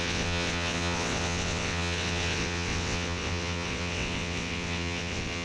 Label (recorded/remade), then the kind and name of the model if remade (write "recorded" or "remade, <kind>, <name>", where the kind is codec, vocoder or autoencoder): remade, vocoder, WaveNeXt